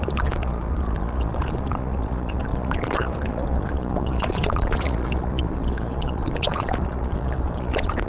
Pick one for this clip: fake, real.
fake